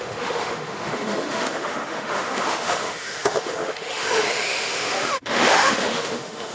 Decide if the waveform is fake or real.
fake